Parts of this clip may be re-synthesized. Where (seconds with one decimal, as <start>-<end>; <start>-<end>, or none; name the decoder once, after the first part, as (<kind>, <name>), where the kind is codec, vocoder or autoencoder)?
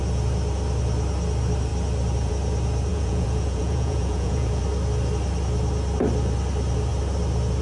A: 2.9-4.6 (vocoder, Vocos)